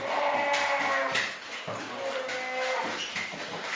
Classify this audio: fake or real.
real